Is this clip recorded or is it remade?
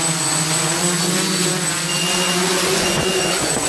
remade